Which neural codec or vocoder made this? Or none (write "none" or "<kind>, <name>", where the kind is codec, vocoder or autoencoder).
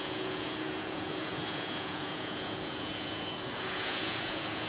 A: vocoder, Vocos